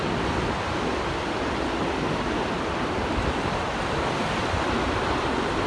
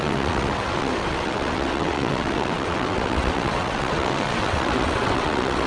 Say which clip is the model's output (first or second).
second